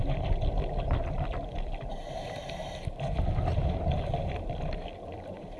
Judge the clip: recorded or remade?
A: recorded